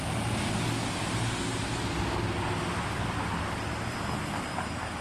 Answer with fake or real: real